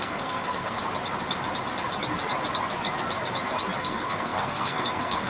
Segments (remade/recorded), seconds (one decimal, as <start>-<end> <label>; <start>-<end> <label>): 0.0-0.8 remade; 0.8-3.8 recorded; 3.8-5.3 remade